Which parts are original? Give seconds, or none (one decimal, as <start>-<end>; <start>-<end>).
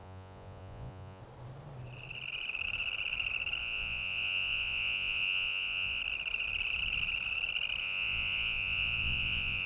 1.2-3.6; 6.0-7.8